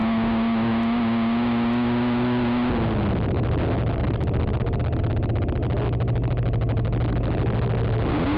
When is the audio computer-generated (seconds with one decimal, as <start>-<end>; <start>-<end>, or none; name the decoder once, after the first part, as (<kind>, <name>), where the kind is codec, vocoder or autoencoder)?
none